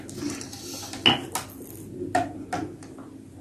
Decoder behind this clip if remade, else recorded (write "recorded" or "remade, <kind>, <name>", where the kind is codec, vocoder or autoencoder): recorded